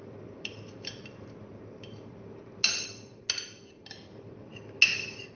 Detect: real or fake real